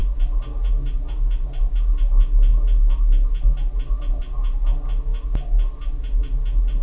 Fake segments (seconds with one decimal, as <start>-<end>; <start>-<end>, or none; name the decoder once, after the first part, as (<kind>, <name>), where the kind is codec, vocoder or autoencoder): none